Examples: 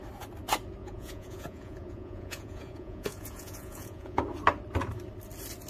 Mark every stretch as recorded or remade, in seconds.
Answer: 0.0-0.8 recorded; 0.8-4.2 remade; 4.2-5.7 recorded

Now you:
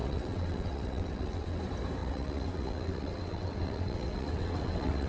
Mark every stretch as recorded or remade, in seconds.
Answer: 0.0-1.6 remade; 1.6-2.0 recorded; 2.0-5.1 remade

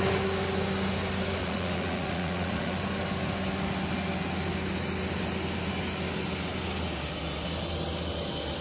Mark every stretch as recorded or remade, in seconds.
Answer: 0.0-1.4 recorded; 1.4-2.8 remade; 2.8-8.6 recorded

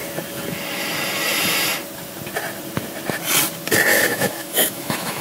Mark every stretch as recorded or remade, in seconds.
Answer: 0.0-3.9 recorded; 3.9-5.2 remade